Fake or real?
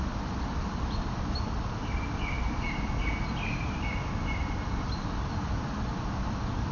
real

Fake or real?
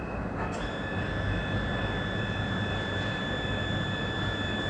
real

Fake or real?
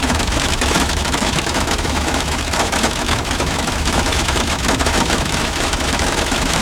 fake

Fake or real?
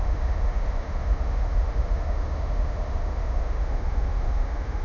fake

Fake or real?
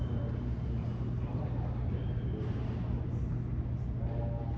real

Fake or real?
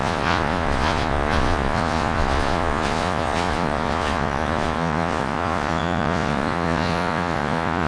fake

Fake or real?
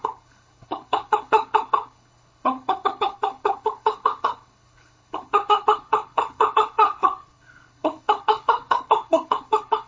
fake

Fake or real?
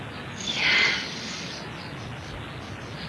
real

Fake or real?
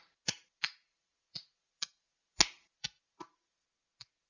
real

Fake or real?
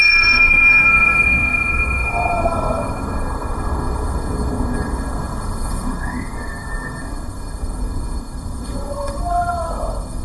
fake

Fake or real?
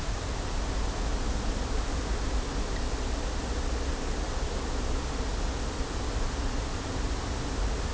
real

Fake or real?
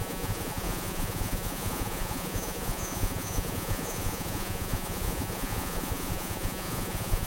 fake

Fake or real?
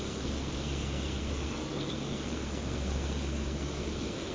fake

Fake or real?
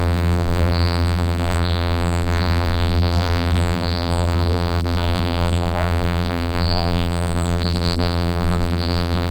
fake